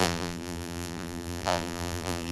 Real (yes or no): no